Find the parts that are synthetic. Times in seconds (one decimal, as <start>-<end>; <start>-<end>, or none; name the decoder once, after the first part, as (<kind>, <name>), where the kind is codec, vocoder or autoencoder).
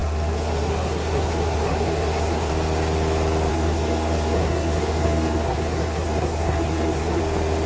0.0-2.5 (codec, SNAC); 3.5-7.2